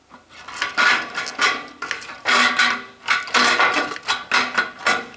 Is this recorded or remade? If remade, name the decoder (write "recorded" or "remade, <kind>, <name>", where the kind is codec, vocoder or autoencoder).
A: recorded